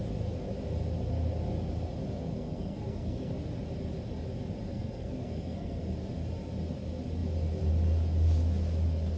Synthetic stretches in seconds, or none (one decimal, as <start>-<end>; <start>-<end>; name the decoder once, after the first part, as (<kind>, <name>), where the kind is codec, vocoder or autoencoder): 2.2-3.4 (codec, SNAC); 4.7-5.8